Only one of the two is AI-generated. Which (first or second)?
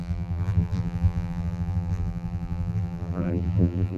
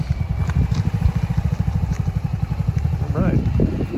first